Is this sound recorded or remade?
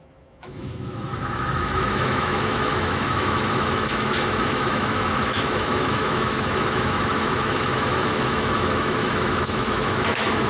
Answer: remade